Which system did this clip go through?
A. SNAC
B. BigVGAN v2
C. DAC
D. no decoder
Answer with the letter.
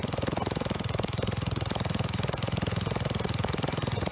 D